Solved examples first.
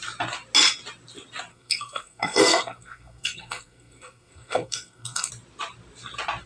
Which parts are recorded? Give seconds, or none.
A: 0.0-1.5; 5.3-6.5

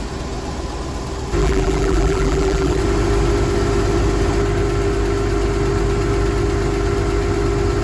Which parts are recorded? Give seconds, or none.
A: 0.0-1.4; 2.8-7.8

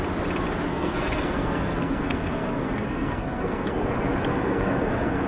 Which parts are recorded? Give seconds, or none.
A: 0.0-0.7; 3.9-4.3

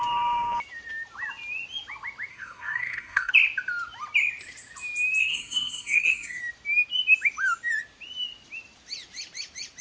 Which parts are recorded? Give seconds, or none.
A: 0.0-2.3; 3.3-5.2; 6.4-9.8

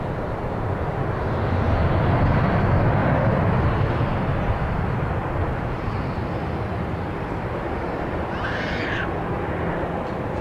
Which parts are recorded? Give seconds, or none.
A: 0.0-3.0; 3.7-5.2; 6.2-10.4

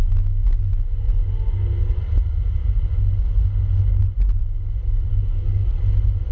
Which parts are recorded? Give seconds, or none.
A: 0.0-5.1; 5.7-6.3